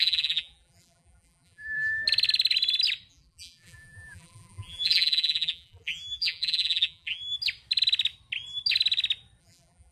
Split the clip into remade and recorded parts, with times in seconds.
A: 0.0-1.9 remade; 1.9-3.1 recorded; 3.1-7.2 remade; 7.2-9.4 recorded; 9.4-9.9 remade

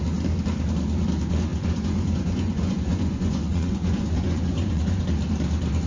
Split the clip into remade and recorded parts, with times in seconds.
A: 0.0-1.5 recorded; 1.5-5.0 remade; 5.0-5.9 recorded

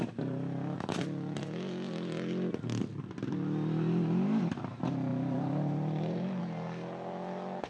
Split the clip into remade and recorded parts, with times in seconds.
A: 0.0-5.1 recorded; 5.1-6.4 remade; 6.4-7.7 recorded

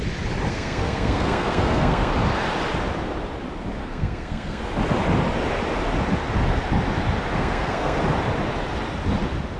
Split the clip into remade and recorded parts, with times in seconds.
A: 0.0-0.5 recorded; 0.5-2.1 remade; 2.1-3.8 recorded; 3.8-4.6 remade; 4.6-7.3 recorded; 7.3-8.0 remade; 8.0-9.6 recorded

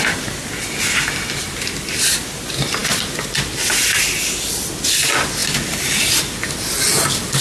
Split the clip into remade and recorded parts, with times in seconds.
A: 0.0-7.4 recorded

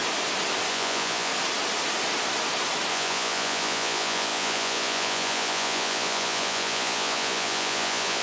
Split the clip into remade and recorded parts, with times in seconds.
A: 0.0-0.7 recorded; 0.7-1.3 remade; 1.3-2.9 recorded; 2.9-8.2 remade